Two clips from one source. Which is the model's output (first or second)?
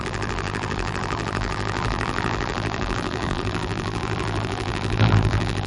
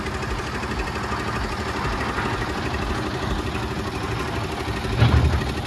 first